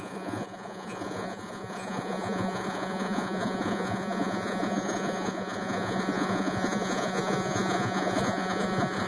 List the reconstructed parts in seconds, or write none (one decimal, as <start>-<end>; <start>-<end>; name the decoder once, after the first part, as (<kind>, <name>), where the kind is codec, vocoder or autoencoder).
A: 0.0-9.1 (vocoder, Vocos)